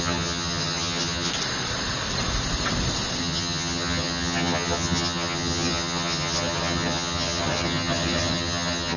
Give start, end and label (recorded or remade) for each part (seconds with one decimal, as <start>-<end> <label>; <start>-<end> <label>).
0.0-1.3 remade; 1.3-3.2 recorded; 3.2-9.0 remade